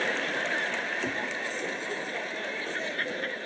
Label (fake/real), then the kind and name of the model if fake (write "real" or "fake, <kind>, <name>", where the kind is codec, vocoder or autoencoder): fake, vocoder, BigVGAN v2